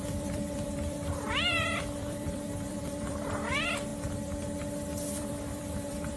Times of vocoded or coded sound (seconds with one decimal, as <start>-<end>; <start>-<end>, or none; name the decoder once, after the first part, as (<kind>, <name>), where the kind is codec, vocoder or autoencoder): 0.0-3.9 (vocoder, BigVGAN v2); 5.1-6.2